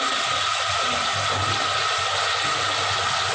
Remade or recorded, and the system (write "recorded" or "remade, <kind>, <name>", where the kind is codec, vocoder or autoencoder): recorded